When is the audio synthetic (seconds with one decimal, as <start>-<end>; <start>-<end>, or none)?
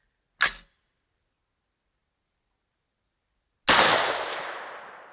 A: none